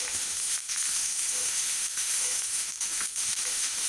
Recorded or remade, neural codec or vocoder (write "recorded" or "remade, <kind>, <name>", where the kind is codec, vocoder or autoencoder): remade, autoencoder, DAC-VAE